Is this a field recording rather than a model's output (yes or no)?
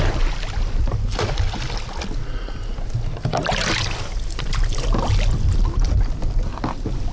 yes